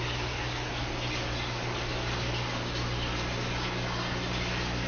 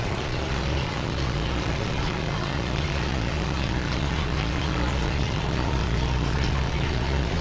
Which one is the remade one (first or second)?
second